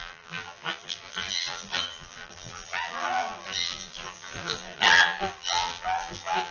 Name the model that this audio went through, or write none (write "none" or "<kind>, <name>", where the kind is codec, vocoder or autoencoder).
vocoder, BigVGAN v2